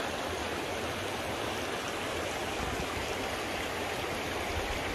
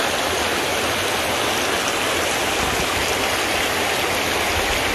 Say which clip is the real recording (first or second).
second